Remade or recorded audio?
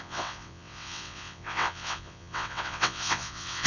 remade